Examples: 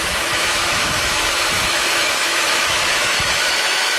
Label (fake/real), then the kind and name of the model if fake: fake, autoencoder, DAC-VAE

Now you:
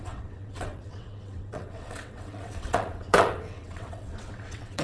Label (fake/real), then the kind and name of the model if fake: fake, vocoder, WaveNeXt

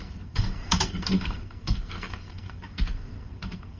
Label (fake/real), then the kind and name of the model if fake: fake, codec, SNAC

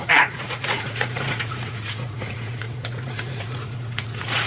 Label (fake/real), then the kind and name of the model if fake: fake, vocoder, Vocos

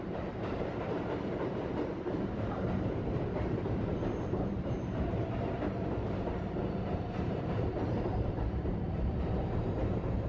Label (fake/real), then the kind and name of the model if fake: fake, vocoder, BigVGAN v2